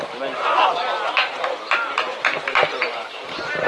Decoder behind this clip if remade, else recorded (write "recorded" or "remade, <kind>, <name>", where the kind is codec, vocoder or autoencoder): recorded